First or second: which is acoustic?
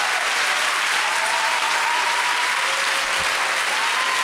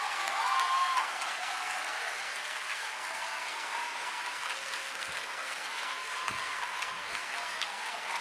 first